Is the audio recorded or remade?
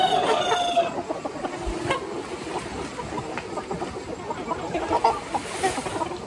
recorded